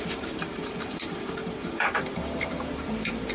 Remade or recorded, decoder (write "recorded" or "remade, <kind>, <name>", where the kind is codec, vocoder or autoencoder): remade, vocoder, BigVGAN v2